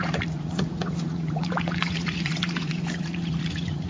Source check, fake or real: fake